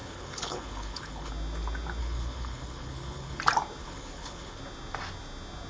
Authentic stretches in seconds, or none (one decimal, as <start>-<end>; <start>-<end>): 1.3-2.0; 3.4-3.8; 4.6-5.7